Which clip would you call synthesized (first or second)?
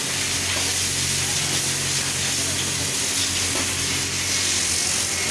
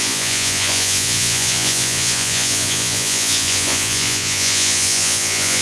second